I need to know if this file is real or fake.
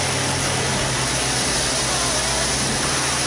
real